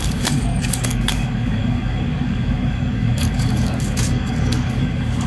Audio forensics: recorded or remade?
remade